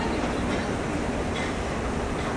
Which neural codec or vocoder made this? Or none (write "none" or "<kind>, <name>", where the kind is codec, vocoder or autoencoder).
none